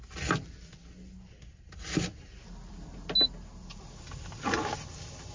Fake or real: real